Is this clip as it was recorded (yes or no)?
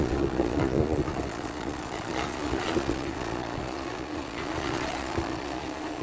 no